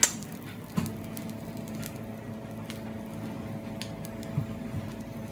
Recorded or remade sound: recorded